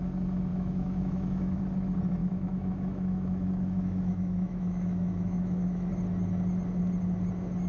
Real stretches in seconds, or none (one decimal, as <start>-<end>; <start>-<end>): 0.0-0.5; 1.6-2.2; 5.9-7.7